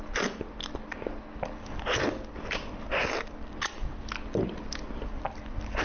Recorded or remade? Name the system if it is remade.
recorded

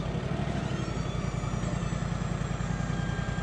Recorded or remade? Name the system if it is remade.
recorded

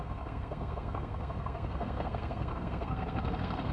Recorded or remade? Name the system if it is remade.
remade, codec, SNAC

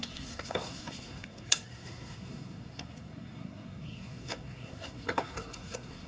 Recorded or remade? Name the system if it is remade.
remade, codec, SNAC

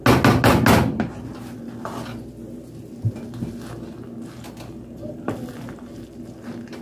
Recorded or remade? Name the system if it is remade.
recorded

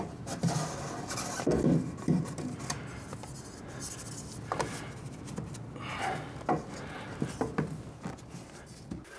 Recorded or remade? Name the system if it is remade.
recorded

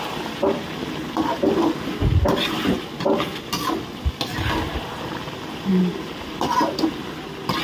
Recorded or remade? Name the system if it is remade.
recorded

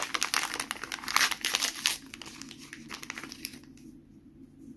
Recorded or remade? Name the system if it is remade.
recorded